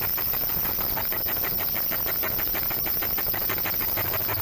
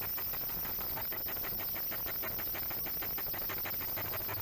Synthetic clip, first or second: first